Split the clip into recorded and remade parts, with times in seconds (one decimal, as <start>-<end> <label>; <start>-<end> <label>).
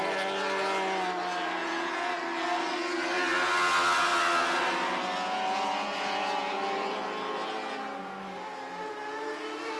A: 0.0-1.6 recorded; 1.6-2.2 remade; 2.2-9.8 recorded